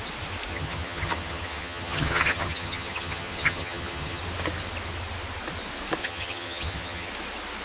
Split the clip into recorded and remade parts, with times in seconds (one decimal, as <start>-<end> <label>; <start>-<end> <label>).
0.0-0.5 recorded; 0.5-4.2 remade; 4.2-6.0 recorded; 6.0-7.1 remade; 7.1-7.6 recorded